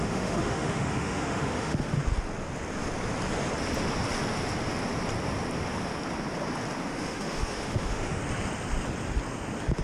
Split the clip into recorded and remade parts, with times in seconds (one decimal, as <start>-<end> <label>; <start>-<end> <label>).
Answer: 0.0-2.0 remade; 2.0-6.9 recorded; 6.9-8.2 remade; 8.2-9.8 recorded